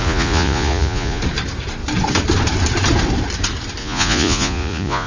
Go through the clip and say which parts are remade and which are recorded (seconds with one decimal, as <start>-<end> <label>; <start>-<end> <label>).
0.0-1.2 remade; 1.2-3.8 recorded; 3.8-5.1 remade